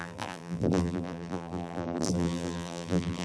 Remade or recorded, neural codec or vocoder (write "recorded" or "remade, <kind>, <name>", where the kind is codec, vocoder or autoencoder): remade, vocoder, BigVGAN v2